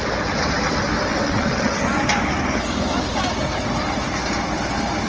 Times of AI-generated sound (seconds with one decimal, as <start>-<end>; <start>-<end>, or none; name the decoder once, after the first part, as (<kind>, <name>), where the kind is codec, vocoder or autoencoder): 1.1-1.8 (vocoder, WaveNeXt)